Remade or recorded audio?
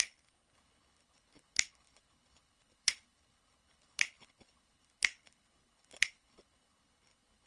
remade